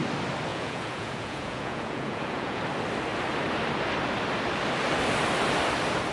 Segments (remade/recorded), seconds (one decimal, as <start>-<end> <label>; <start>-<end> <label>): 0.0-0.5 recorded; 0.5-2.6 remade; 2.6-6.1 recorded